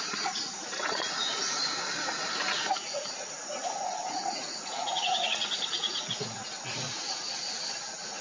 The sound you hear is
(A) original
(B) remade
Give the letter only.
B